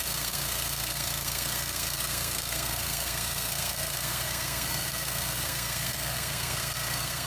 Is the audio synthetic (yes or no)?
yes